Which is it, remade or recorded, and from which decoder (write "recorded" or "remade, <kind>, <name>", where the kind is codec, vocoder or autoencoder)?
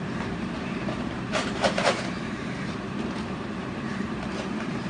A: remade, vocoder, BigVGAN v2